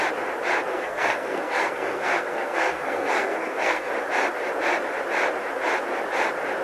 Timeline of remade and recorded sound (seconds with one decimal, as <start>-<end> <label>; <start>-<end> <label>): 0.0-0.7 recorded; 0.7-3.9 remade; 3.9-6.6 recorded